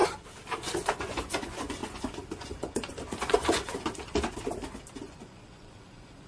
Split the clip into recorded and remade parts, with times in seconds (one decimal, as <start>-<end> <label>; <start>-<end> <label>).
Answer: 0.0-0.6 recorded; 0.6-3.7 remade; 3.7-5.0 recorded; 5.0-6.3 remade